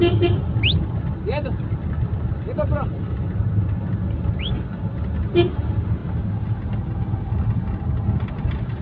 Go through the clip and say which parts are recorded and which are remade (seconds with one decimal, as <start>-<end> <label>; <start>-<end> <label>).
0.0-8.8 recorded